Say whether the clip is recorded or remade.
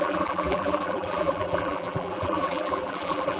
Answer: remade